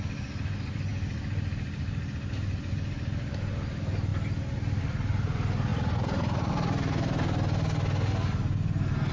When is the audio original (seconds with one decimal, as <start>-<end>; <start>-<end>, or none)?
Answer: 0.0-5.7; 6.5-9.1